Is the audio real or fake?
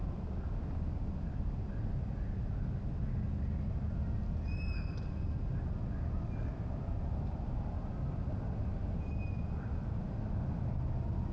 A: real